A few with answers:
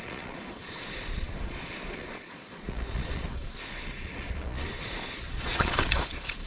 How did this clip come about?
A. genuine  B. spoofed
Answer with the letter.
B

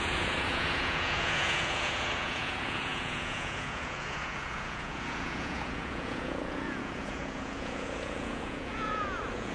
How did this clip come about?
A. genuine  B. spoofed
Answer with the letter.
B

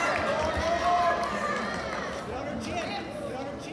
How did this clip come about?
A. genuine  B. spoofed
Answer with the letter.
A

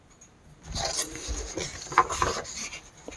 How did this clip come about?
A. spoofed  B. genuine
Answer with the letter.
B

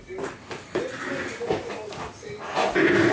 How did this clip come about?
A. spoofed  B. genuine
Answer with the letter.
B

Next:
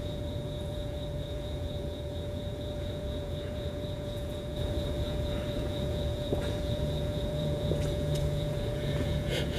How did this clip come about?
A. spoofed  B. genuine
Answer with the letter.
A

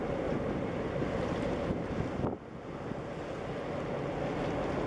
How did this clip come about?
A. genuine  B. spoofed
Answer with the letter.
A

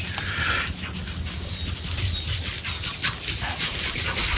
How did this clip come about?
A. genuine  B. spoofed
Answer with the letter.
A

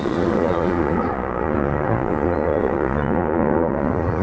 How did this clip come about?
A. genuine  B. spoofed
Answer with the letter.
B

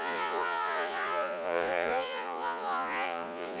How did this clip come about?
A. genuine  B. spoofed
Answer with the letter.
B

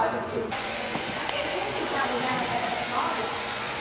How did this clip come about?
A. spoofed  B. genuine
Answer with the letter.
A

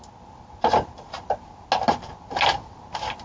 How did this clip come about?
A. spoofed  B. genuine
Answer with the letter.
B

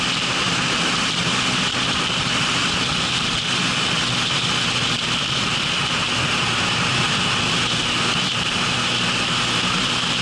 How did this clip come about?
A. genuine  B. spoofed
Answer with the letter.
A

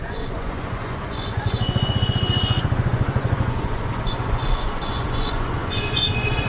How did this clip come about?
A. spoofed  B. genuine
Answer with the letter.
A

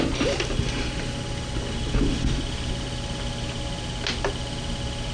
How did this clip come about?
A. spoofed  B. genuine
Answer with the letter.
B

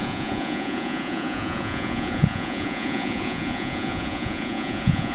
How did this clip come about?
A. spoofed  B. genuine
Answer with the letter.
A